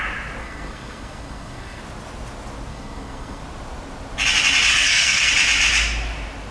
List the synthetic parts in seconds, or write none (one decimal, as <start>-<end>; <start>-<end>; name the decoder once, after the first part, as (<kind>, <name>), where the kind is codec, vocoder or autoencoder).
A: 0.4-1.8 (codec, SNAC); 2.7-3.4; 4.7-5.3